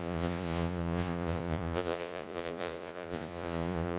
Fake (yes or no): yes